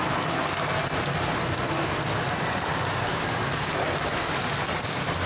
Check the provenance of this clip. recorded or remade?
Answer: recorded